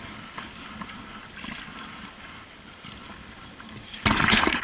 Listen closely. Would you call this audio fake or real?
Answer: real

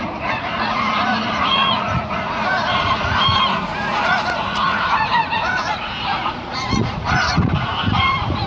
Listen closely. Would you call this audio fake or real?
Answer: fake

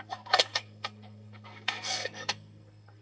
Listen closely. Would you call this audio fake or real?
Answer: fake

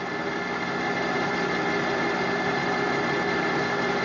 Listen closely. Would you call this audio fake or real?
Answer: real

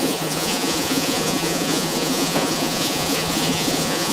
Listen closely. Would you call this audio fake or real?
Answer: fake